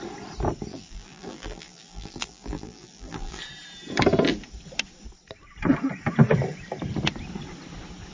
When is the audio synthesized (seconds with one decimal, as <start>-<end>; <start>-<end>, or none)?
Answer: 0.7-3.4